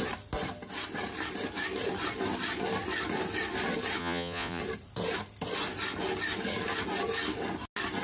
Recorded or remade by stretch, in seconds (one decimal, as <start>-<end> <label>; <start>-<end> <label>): 0.0-4.0 recorded; 4.0-4.6 remade; 4.6-8.0 recorded